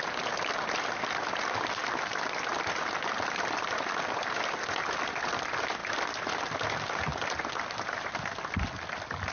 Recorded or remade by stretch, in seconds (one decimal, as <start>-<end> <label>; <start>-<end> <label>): 0.0-9.3 recorded